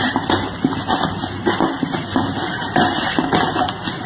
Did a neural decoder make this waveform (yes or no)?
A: no